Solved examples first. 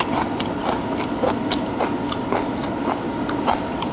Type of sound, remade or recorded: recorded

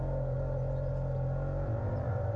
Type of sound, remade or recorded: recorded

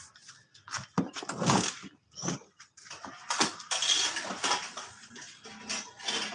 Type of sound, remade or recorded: recorded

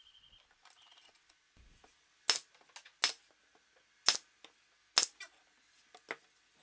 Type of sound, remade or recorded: recorded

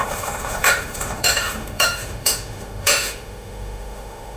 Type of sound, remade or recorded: remade